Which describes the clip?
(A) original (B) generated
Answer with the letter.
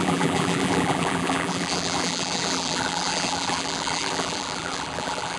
B